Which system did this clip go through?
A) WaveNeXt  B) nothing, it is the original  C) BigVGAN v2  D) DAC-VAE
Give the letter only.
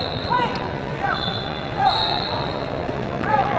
A